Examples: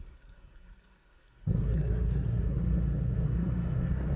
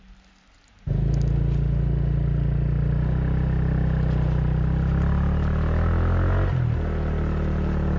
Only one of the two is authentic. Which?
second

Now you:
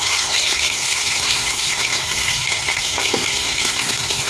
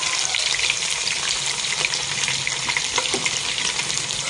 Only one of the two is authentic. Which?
second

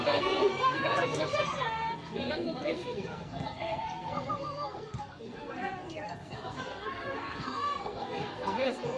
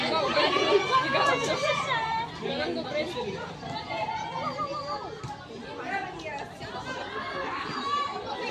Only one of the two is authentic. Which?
second